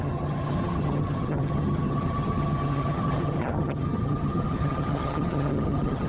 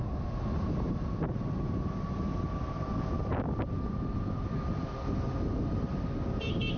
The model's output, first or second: first